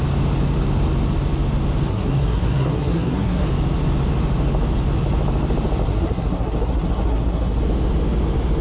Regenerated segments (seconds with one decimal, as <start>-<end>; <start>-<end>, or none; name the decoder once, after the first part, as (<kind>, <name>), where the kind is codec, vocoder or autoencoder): 1.9-3.5 (codec, SNAC); 5.8-7.6